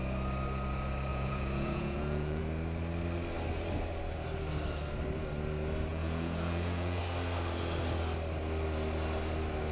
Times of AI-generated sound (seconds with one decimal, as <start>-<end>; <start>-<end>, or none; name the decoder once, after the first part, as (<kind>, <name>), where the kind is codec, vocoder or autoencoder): 1.1-2.4 (vocoder, Vocos); 5.9-7.0